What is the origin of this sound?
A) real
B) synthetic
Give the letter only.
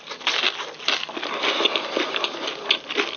A